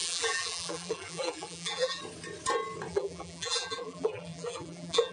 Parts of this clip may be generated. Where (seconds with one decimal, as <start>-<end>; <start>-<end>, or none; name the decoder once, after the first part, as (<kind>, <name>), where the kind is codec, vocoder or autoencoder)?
0.0-2.0 (vocoder, BigVGAN v2); 2.9-5.1